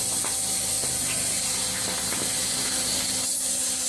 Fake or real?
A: real